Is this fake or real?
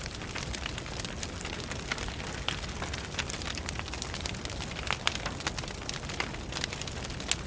real